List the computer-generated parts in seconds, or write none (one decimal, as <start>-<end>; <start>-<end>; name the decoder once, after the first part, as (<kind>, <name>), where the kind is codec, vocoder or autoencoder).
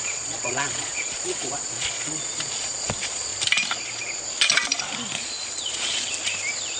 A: 0.0-3.3 (vocoder, Vocos); 5.2-6.1